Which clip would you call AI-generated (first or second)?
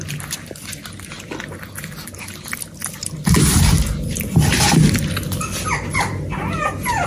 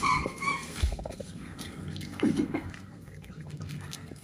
second